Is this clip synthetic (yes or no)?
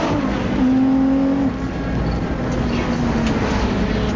no